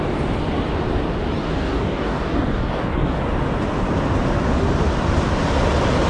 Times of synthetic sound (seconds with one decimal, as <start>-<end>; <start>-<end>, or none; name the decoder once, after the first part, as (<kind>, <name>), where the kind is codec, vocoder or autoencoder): 1.4-3.2 (codec, DAC)